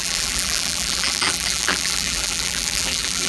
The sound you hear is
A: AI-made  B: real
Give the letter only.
A